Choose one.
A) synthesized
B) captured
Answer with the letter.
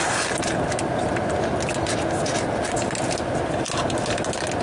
B